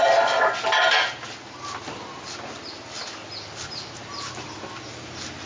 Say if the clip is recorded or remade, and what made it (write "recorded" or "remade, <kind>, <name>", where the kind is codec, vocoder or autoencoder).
recorded